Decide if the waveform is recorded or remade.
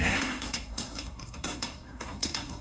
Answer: remade